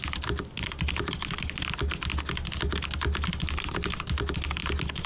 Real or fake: real